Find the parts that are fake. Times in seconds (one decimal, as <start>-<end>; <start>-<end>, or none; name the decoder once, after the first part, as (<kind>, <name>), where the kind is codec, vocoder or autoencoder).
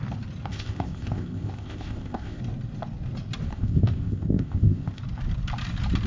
0.5-2.4 (codec, ZipCodec); 3.5-5.0